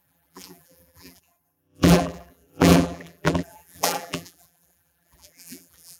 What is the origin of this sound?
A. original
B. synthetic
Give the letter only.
B